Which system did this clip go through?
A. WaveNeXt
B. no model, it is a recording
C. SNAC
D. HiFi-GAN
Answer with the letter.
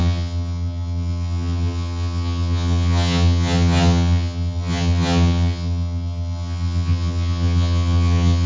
D